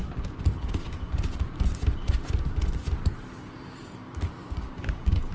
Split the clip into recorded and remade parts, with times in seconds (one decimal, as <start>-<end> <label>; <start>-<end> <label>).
0.0-4.4 recorded; 4.4-5.3 remade